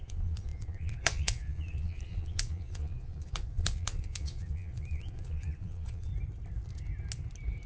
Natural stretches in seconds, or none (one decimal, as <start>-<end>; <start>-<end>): 6.1-7.7